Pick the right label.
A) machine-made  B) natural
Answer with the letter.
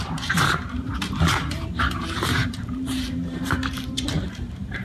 A